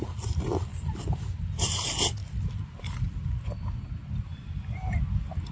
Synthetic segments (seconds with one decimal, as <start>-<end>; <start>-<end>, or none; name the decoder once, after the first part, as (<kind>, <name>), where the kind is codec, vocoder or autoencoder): 0.7-1.3 (vocoder, BigVGAN v2)